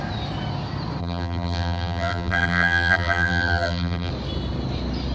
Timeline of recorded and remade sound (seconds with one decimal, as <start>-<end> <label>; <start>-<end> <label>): 0.0-1.0 recorded; 1.0-4.1 remade; 4.1-5.1 recorded